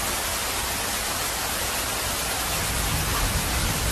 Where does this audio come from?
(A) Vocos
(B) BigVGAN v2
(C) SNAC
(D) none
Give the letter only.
D